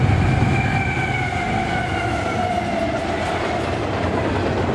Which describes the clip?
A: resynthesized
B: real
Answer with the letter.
B